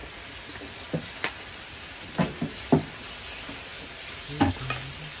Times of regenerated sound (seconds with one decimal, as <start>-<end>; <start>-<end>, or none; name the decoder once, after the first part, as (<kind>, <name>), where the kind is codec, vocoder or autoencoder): none